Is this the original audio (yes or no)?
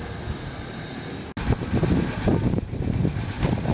yes